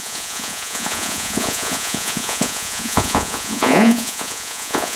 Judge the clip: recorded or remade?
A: remade